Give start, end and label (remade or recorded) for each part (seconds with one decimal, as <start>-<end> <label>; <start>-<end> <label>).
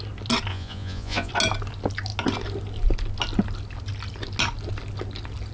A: 0.0-0.5 recorded; 0.5-1.3 remade; 1.3-5.5 recorded